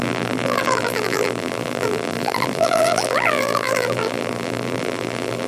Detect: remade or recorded remade